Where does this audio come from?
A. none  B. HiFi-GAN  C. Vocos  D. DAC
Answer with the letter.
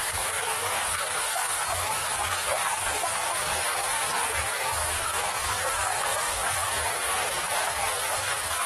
D